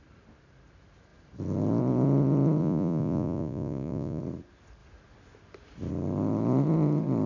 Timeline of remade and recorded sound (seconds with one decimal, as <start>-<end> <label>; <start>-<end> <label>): 0.0-2.6 recorded; 2.6-4.2 remade; 4.2-7.3 recorded